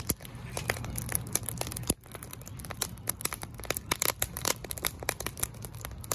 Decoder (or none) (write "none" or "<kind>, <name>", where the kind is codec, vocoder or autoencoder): none